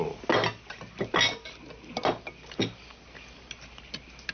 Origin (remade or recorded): recorded